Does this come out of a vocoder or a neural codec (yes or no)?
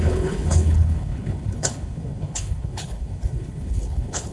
yes